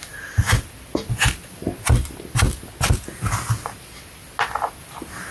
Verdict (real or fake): real